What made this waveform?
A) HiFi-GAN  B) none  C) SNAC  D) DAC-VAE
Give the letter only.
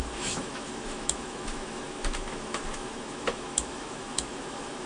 D